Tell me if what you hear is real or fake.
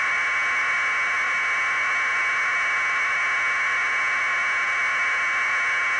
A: real